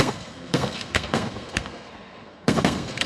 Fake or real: fake